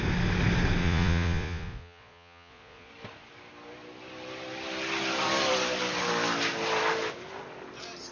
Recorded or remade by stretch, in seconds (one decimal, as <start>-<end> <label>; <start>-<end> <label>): 0.0-0.8 recorded; 0.8-2.9 remade; 2.9-8.1 recorded